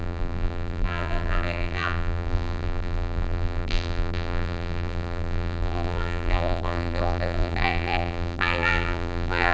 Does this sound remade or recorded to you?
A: remade